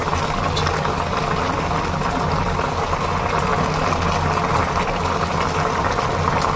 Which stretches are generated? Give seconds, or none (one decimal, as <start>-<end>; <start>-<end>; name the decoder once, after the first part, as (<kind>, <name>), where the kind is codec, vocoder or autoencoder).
none